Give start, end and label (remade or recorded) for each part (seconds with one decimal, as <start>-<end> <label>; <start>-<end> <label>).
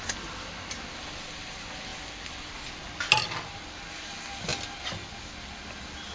0.0-6.1 recorded